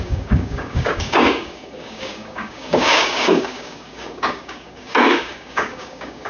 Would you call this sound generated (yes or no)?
yes